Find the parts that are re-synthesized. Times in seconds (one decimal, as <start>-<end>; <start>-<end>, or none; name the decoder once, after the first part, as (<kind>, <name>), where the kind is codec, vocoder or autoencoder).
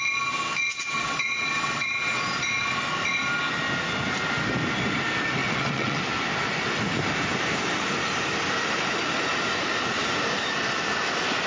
0.7-2.2 (vocoder, WaveNeXt); 5.4-6.0